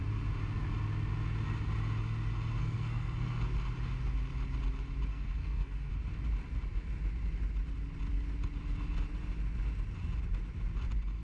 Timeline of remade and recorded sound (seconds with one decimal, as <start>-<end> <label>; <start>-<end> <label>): 0.0-2.6 recorded; 2.6-3.4 remade; 3.4-5.1 recorded; 5.1-5.9 remade; 5.9-11.2 recorded